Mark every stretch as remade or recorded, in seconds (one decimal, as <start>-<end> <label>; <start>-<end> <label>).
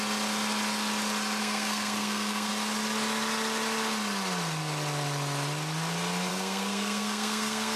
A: 0.0-1.4 recorded; 1.4-2.5 remade; 2.5-6.3 recorded; 6.3-7.8 remade